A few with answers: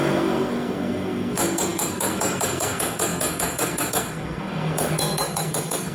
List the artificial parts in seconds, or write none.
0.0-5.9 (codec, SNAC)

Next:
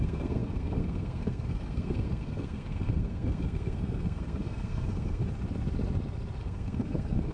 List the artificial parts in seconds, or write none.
0.0-5.2 (codec, SNAC); 6.4-7.3

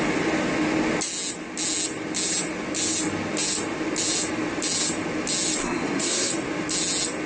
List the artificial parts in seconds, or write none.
5.6-6.3 (codec, SNAC)

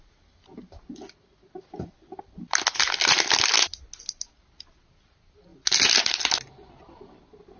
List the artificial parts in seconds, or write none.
none

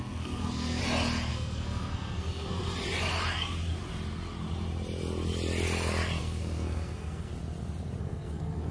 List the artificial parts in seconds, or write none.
0.0-0.8 (codec, SNAC); 1.3-2.6; 6.2-7.3; 8.0-8.7

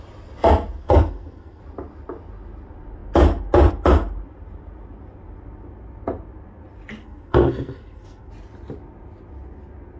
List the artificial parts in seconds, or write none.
0.8-1.6 (codec, SNAC); 7.0-8.3